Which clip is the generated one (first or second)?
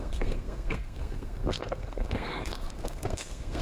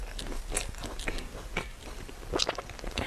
first